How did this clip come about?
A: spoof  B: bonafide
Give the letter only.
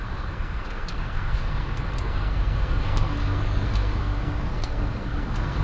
A